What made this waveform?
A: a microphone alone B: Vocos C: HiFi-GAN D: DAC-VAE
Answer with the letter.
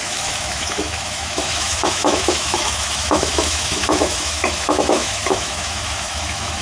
D